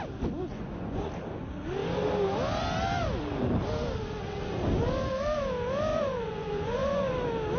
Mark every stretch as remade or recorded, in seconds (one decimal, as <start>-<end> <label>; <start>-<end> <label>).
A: 0.0-0.5 recorded; 0.5-1.1 remade; 1.1-5.9 recorded; 5.9-7.1 remade; 7.1-7.6 recorded